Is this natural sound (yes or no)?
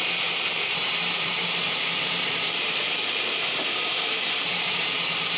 no